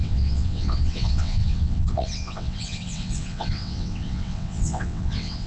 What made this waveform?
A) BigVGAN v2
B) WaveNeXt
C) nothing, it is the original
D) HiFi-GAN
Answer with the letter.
B